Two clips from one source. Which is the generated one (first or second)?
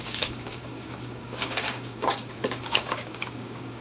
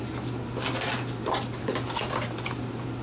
first